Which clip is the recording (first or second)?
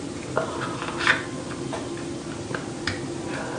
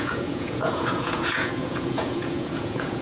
first